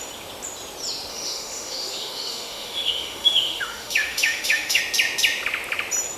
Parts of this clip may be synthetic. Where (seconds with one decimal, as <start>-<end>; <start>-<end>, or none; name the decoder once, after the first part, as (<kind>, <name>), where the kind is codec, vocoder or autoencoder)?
1.1-4.8 (autoencoder, DAC-VAE)